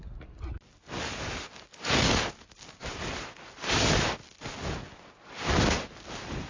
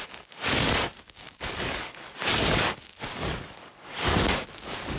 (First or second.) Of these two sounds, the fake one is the second